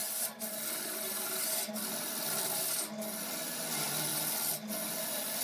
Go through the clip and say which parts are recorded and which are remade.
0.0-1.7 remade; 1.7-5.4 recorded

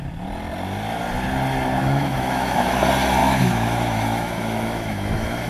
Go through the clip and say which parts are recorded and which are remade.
0.0-1.8 recorded; 1.8-2.8 remade; 2.8-3.2 recorded; 3.2-5.5 remade

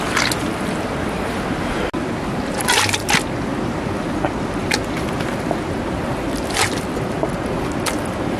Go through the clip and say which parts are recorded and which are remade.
0.0-8.4 recorded